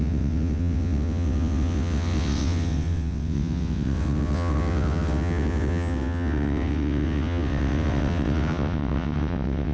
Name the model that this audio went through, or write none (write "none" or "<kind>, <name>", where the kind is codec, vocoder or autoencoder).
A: vocoder, WaveNeXt